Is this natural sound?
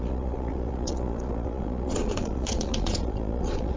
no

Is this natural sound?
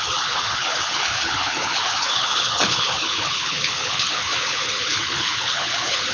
no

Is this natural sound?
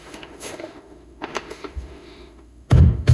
no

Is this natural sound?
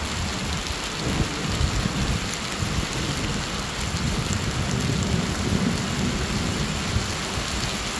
yes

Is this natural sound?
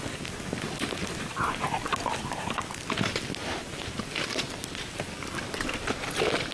no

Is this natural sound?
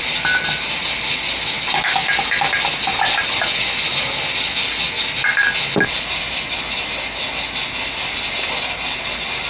yes